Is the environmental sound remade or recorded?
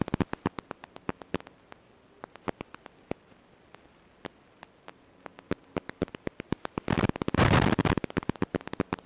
recorded